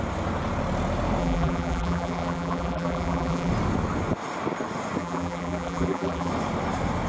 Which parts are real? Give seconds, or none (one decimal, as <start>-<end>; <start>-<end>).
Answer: 0.0-1.2; 3.5-5.0; 6.3-7.1